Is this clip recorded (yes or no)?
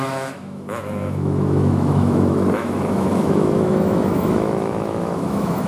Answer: no